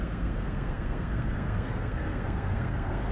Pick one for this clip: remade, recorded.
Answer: remade